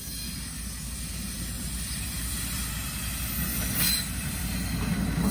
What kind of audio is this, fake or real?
real